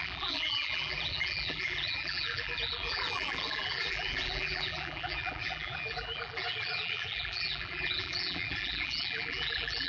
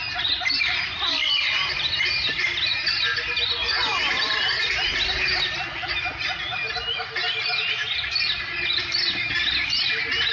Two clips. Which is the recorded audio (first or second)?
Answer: second